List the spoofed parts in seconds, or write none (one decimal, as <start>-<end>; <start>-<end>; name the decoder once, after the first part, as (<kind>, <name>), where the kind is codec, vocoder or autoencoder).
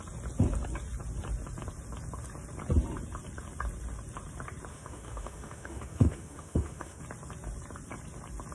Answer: 4.7-7.0 (autoencoder, DAC-VAE)